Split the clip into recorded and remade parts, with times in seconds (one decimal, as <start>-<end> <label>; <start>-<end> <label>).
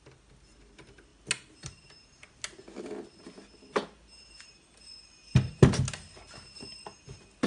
0.0-7.5 recorded